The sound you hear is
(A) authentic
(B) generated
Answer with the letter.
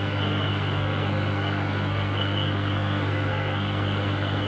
B